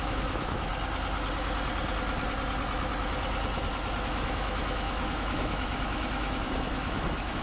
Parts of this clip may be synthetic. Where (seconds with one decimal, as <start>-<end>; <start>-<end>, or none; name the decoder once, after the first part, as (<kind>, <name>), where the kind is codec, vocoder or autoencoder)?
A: 0.0-0.7 (autoencoder, DAC-VAE); 4.0-7.4